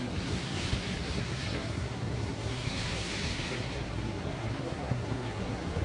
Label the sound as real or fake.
fake